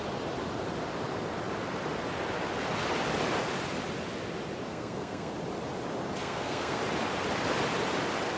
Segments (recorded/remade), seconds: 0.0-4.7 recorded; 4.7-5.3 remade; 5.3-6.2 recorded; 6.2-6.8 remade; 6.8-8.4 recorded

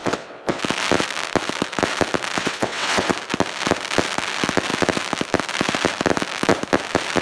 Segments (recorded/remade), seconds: 0.0-0.6 remade; 0.6-2.4 recorded; 2.4-3.1 remade; 3.1-7.2 recorded

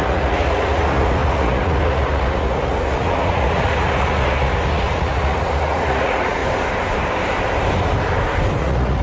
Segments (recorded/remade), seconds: 0.0-6.4 remade; 6.4-8.6 recorded; 8.6-9.0 remade

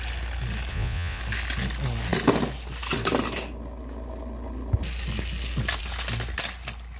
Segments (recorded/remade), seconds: 0.0-0.7 recorded; 0.7-1.2 remade; 1.2-7.0 recorded

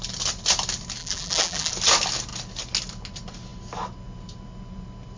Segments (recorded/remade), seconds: 0.0-1.0 recorded; 1.0-1.7 remade; 1.7-5.2 recorded

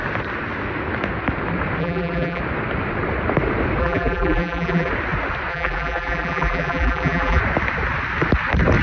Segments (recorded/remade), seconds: 0.0-1.8 recorded; 1.8-2.4 remade; 2.4-3.8 recorded; 3.8-4.9 remade; 4.9-5.5 recorded; 5.5-7.4 remade; 7.4-8.8 recorded

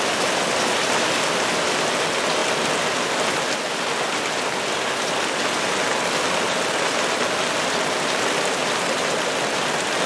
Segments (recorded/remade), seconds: 0.0-10.1 recorded

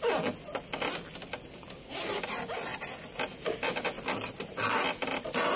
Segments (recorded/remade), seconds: 0.0-5.6 recorded